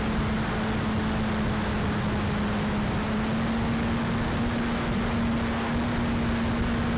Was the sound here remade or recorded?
recorded